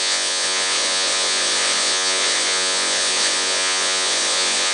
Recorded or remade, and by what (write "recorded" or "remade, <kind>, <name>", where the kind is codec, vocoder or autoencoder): remade, vocoder, Vocos